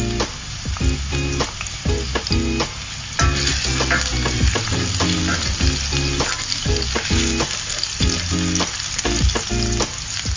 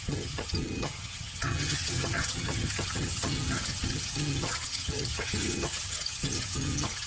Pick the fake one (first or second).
second